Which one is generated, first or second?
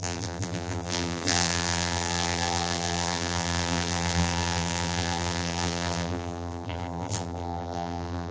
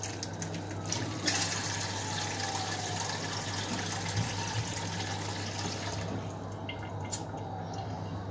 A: first